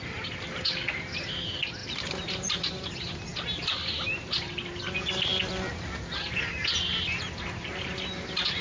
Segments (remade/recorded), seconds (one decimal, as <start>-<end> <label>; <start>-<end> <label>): 0.0-1.8 recorded; 1.8-2.9 remade; 2.9-8.6 recorded